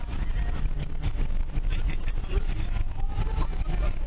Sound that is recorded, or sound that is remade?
recorded